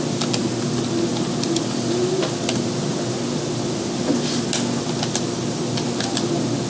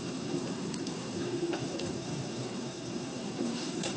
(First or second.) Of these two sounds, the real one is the first